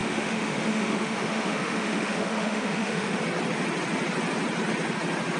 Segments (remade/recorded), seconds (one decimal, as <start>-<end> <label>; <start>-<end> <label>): 0.0-3.2 remade; 3.2-5.4 recorded